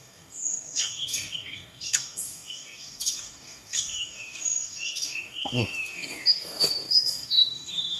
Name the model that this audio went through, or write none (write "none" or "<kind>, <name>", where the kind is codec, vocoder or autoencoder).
codec, DAC